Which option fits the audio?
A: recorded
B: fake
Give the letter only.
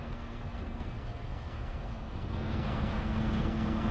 B